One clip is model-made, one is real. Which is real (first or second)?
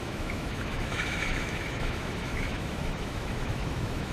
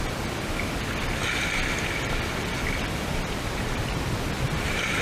second